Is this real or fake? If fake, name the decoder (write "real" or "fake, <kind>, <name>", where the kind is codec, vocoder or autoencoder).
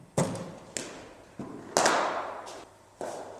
real